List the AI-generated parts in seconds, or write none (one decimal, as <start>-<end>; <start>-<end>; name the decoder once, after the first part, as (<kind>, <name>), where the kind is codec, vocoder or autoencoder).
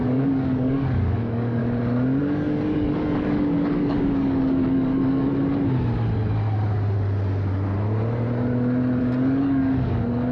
0.0-1.6 (codec, DAC); 2.2-5.3; 9.0-10.3